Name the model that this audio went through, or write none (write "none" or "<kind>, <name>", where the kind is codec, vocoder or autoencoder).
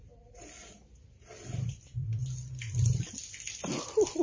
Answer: none